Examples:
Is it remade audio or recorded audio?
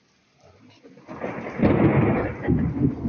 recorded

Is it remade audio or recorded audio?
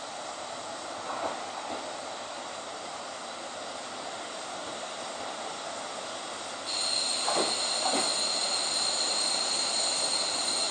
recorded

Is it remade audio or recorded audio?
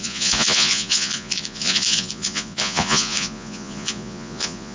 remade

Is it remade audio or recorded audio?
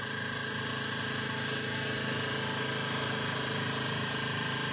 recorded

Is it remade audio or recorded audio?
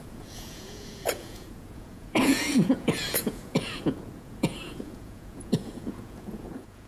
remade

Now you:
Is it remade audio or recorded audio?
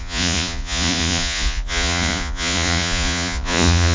remade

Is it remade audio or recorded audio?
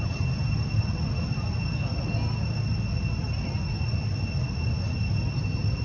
recorded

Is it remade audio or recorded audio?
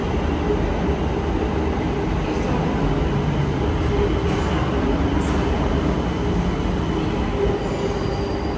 recorded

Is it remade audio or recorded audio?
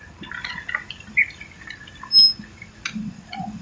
recorded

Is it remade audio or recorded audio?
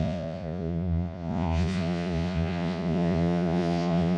remade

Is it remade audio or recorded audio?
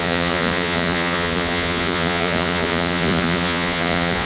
remade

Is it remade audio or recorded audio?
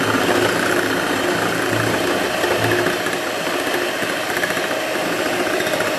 recorded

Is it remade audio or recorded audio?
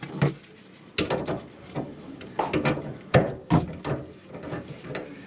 recorded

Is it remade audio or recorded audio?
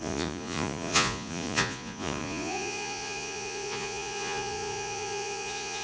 remade